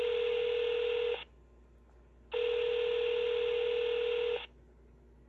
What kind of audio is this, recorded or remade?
recorded